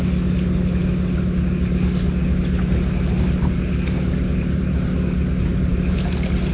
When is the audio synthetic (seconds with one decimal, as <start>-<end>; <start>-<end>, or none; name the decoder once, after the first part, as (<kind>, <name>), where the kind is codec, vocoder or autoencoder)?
none